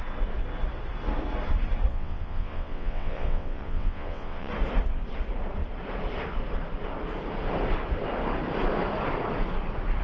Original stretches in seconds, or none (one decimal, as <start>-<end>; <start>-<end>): 0.0-1.9; 4.5-10.0